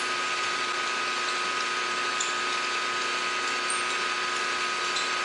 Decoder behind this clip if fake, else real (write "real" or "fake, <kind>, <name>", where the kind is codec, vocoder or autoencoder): real